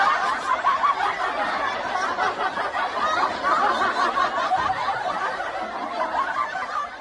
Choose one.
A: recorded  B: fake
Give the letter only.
A